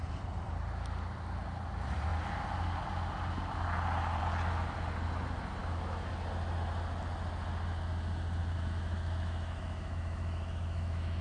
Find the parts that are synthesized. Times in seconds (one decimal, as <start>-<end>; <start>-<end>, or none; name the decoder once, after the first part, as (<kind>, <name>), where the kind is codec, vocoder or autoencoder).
5.6-6.1 (autoencoder, DAC-VAE); 8.4-11.2